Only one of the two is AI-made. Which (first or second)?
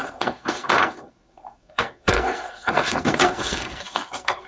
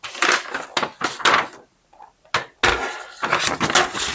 first